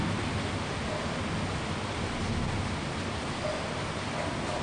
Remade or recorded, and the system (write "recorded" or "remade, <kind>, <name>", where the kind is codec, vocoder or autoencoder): recorded